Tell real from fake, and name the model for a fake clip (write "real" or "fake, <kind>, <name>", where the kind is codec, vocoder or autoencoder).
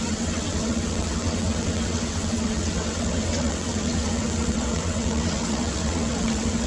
fake, vocoder, WaveNeXt